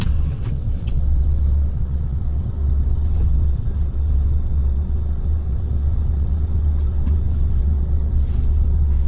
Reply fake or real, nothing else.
fake